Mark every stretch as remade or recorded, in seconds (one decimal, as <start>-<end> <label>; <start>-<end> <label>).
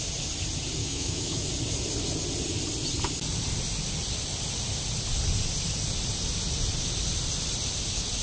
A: 0.0-0.8 recorded; 0.8-1.5 remade; 1.5-8.2 recorded